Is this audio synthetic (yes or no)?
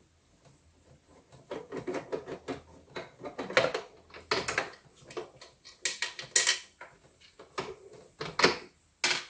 no